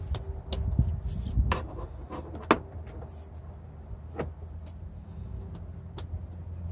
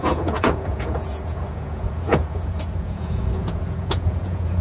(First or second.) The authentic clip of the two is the first